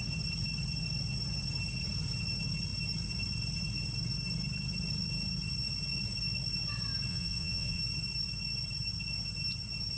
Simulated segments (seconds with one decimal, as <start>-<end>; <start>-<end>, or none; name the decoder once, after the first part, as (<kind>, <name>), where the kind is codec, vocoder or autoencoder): 7.1-7.8 (vocoder, Vocos)